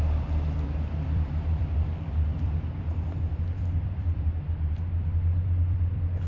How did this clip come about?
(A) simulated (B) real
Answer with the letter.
A